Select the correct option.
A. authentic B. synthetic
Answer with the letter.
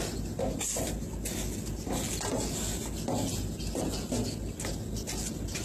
A